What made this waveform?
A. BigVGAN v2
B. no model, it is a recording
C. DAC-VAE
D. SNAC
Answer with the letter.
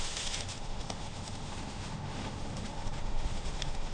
C